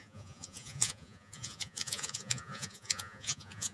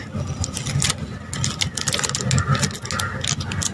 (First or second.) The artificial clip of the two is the first